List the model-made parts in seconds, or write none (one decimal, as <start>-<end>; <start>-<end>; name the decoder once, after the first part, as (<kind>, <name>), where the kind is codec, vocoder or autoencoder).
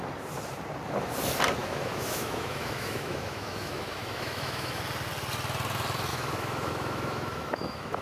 1.6-4.8 (autoencoder, DAC-VAE); 6.1-8.0